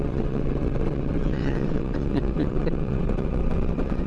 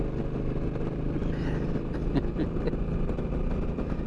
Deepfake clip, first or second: first